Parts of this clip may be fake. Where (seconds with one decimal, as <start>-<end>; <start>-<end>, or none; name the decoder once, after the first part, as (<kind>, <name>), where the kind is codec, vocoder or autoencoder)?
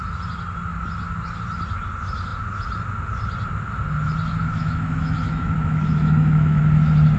4.4-6.6 (autoencoder, DAC-VAE)